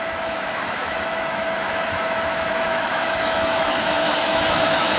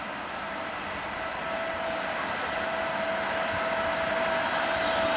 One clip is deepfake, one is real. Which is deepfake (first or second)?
first